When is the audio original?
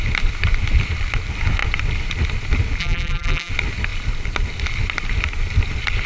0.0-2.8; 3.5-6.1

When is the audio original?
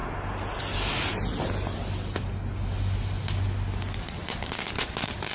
0.0-5.3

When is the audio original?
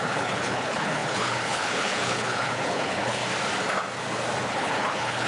3.2-4.5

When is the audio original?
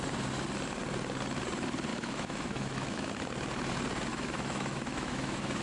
0.0-1.9; 3.1-4.1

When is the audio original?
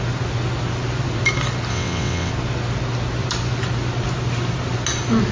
0.0-1.7; 2.3-5.3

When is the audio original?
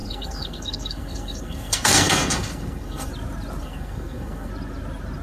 3.1-3.6; 4.5-5.2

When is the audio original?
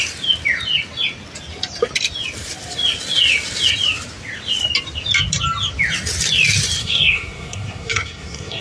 0.0-6.8